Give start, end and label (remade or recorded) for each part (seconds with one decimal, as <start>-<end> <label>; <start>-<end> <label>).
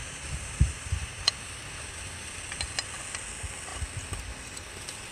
0.0-2.4 remade; 2.4-5.1 recorded